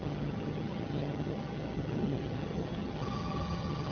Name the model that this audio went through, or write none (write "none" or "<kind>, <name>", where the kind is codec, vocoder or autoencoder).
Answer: vocoder, HiFi-GAN